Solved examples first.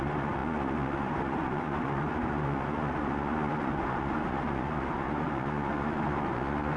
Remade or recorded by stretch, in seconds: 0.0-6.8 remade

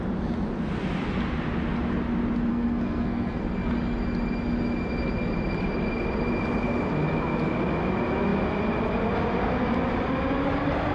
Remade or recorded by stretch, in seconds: 0.0-2.5 recorded; 2.5-3.4 remade; 3.4-10.9 recorded